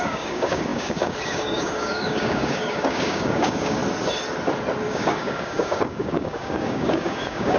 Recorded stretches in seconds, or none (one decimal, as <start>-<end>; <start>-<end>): 3.8-4.9